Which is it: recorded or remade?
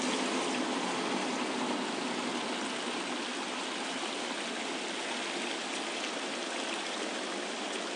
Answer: recorded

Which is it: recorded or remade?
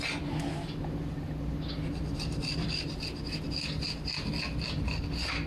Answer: recorded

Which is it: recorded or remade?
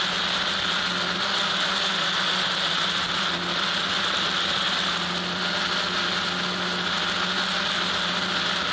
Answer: recorded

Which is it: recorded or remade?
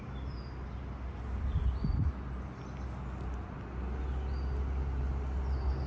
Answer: recorded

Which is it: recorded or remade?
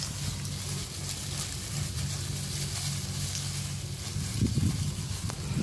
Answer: recorded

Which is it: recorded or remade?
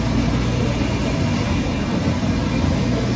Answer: recorded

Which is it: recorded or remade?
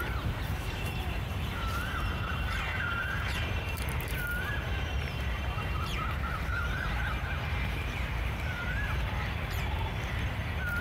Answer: remade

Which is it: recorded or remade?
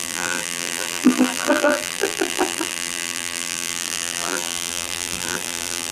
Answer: remade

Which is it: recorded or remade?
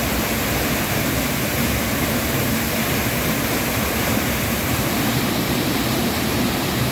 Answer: remade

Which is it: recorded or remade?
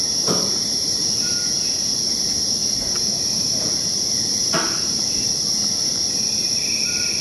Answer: remade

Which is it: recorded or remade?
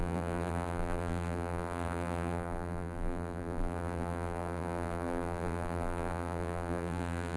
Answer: remade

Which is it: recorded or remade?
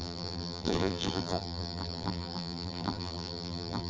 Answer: remade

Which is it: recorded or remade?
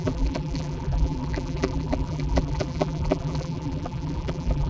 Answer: remade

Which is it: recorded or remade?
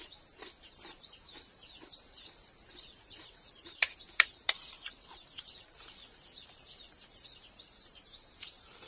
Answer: remade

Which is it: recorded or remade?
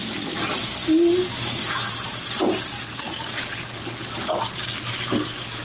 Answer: recorded